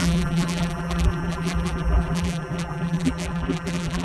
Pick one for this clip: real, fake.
fake